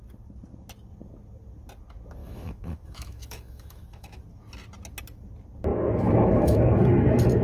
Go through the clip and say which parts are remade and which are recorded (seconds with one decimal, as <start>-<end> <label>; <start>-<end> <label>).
0.0-2.2 recorded; 2.2-4.2 remade; 4.2-5.7 recorded; 5.7-6.6 remade; 6.6-7.4 recorded